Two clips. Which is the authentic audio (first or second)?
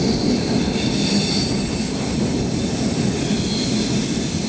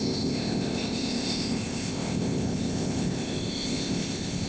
first